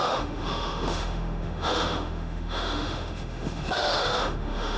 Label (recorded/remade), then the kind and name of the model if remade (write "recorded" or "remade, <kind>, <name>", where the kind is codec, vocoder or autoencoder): remade, autoencoder, DAC-VAE